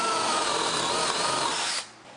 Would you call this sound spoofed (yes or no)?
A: no